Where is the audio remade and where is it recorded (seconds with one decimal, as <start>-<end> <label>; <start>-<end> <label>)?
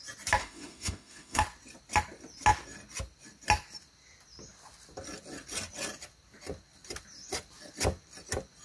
0.0-0.4 recorded; 0.4-1.4 remade; 1.4-8.6 recorded